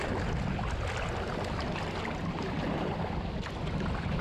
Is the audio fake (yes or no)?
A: no